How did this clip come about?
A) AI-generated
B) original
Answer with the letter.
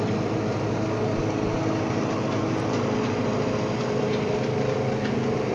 A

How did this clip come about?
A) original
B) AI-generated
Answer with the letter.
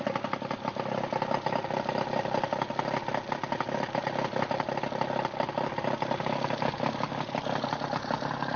A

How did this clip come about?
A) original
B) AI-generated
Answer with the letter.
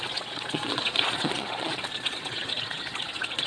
B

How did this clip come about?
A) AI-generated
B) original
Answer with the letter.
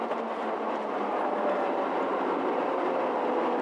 A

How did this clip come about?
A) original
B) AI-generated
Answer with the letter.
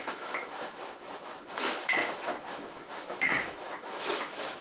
B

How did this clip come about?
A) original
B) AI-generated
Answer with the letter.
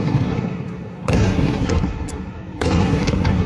B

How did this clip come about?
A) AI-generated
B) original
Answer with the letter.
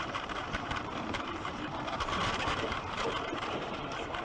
A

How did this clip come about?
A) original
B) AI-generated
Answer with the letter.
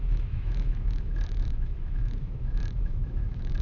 B